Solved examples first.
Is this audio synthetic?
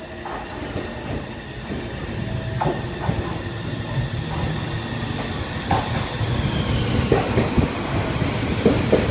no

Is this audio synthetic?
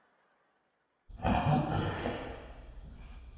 no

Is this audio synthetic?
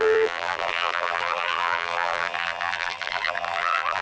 yes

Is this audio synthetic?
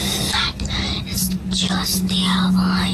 yes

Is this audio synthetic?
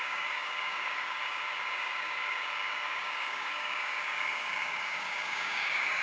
yes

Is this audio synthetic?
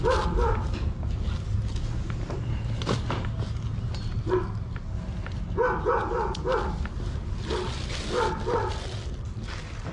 no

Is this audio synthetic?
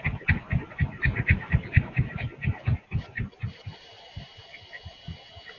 no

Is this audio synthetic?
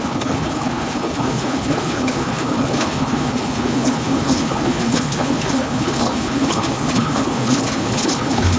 yes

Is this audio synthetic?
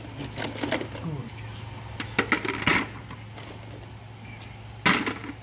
no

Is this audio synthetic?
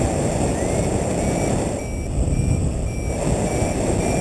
no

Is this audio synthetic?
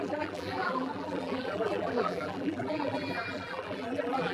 yes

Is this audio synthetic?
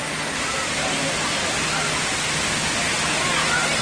no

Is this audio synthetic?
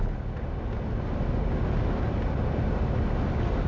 no